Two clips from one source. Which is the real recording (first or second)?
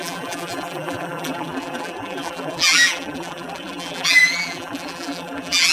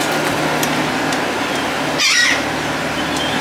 second